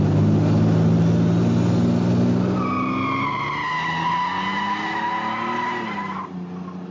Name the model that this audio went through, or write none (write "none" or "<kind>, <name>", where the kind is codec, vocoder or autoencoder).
none